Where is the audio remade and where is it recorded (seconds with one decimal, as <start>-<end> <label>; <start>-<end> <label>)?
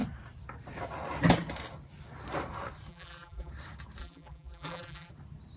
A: 0.0-2.9 recorded; 2.9-3.5 remade; 3.5-4.0 recorded; 4.0-5.1 remade; 5.1-5.6 recorded